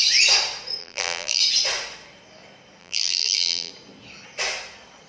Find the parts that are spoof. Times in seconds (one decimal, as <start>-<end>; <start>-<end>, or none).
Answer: 0.8-1.4; 2.8-3.7